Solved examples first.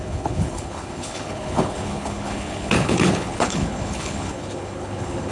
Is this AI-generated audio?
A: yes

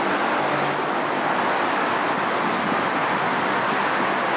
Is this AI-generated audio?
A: no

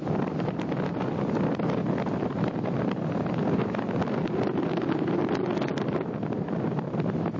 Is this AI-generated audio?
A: no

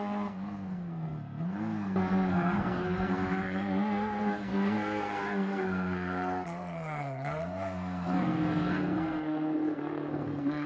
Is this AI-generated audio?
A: yes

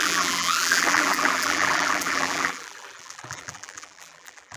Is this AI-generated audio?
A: yes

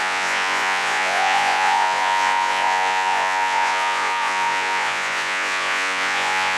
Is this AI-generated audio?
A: yes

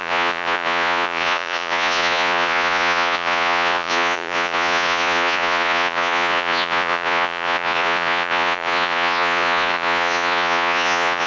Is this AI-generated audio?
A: yes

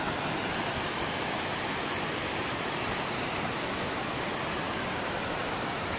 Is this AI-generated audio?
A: no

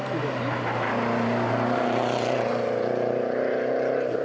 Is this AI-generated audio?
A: no